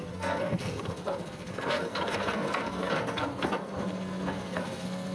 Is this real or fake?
fake